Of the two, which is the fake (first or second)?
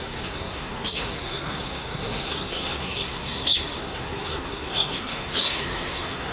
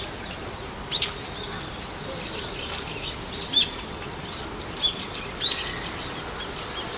first